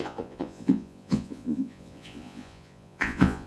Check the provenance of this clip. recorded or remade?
remade